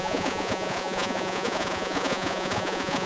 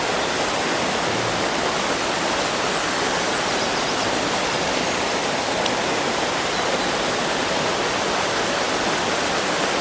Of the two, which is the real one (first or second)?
second